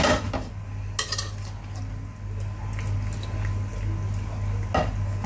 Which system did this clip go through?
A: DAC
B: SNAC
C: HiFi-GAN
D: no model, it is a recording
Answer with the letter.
D